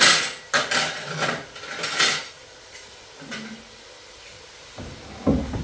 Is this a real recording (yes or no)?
yes